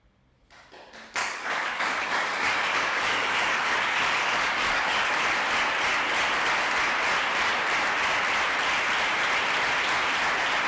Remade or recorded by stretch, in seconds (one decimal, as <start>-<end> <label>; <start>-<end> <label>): 0.0-1.2 recorded; 1.2-5.1 remade; 5.1-10.7 recorded